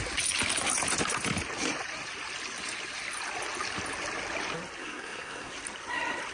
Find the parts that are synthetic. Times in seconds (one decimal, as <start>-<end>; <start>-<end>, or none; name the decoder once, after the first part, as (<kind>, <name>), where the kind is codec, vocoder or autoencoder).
4.8-5.5 (codec, SNAC)